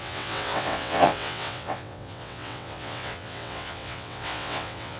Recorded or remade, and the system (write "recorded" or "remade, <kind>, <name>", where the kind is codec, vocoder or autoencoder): remade, vocoder, WaveNeXt